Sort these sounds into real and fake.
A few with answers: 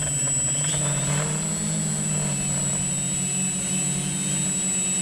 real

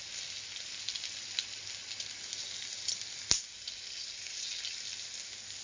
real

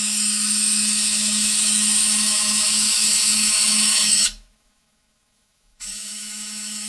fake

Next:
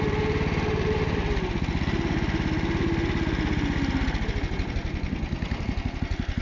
real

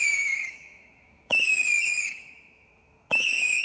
fake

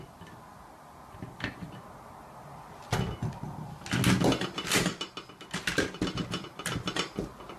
real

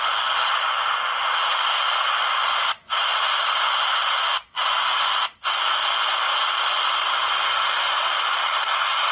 real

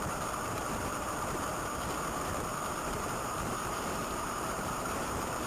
fake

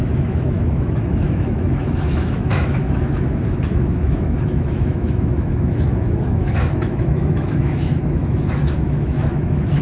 fake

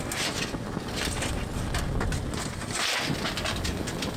real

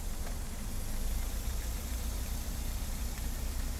fake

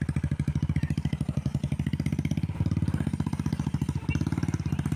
real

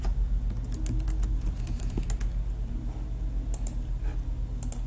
real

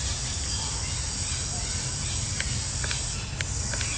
real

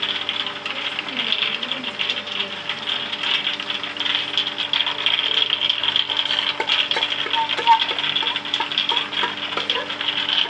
real